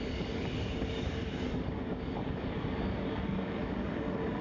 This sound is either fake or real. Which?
fake